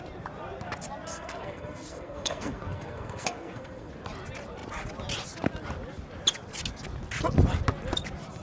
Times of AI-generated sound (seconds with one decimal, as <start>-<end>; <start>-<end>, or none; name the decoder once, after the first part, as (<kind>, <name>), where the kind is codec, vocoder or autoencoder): 1.1-3.9 (codec, SNAC)